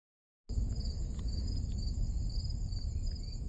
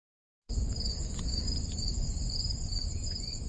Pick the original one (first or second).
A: first